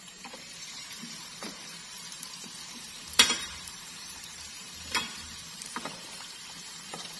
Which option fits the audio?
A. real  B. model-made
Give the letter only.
B